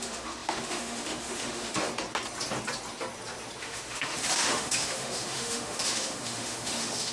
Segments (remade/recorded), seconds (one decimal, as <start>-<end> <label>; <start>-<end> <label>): 0.0-1.9 remade; 1.9-3.6 recorded; 3.6-7.1 remade